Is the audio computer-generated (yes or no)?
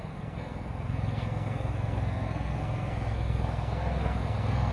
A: yes